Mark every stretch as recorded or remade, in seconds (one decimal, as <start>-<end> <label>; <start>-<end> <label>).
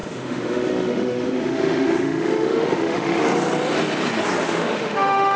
0.0-3.2 remade; 3.2-4.4 recorded; 4.4-5.4 remade